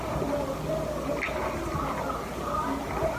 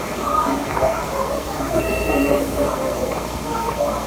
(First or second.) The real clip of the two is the first